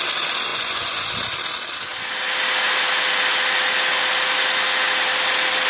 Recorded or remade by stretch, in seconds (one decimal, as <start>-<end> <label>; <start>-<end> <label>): 0.0-0.5 recorded; 0.5-1.1 remade; 1.1-5.7 recorded